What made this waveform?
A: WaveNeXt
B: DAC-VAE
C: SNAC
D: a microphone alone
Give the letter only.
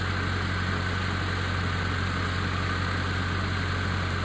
D